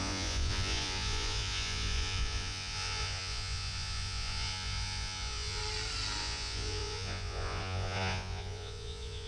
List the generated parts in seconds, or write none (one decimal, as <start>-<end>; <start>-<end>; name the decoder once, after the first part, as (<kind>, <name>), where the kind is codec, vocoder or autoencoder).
0.0-5.6 (vocoder, Vocos); 6.2-9.3